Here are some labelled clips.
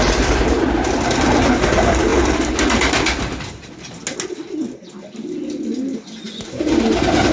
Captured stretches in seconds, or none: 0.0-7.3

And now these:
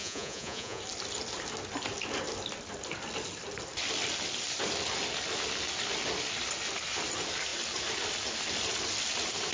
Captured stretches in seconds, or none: 0.8-9.5

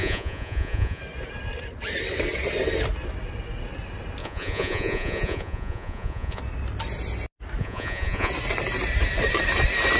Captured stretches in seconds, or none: 1.0-4.2; 6.4-7.6; 8.3-10.0